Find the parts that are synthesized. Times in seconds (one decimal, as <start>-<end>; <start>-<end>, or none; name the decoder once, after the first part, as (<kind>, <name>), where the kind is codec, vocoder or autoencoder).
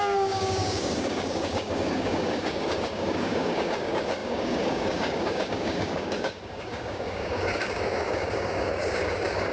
0.0-9.5 (codec, DAC)